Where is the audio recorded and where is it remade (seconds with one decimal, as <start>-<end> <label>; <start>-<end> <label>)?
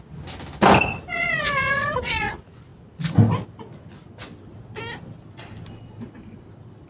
0.0-1.1 recorded; 1.1-2.3 remade; 2.3-6.9 recorded